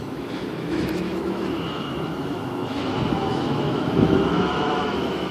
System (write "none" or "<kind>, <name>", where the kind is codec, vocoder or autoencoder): autoencoder, DAC-VAE